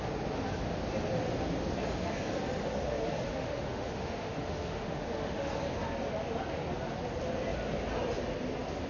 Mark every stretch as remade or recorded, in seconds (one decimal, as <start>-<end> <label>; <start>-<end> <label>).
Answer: 0.0-3.3 recorded; 3.3-5.6 remade; 5.6-8.9 recorded